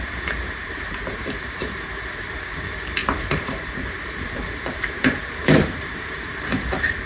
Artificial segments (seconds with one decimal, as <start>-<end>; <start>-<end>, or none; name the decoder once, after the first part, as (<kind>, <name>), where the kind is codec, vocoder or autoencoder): 0.0-7.1 (vocoder, BigVGAN v2)